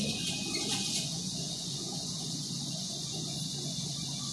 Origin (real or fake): fake